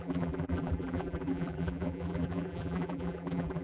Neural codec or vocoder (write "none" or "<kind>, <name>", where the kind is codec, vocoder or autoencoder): vocoder, BigVGAN v2